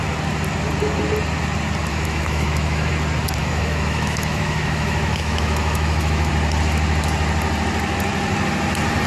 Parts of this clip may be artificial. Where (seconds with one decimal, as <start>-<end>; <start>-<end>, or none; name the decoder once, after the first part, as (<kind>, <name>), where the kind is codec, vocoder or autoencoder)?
1.9-2.9 (autoencoder, DAC-VAE); 3.4-6.3